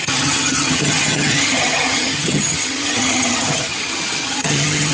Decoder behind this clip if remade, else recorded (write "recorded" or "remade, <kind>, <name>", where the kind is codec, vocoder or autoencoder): remade, vocoder, HiFi-GAN